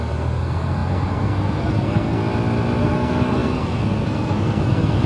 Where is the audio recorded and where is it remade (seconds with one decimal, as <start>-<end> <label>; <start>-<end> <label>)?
0.0-2.2 remade; 2.2-2.8 recorded; 2.8-5.1 remade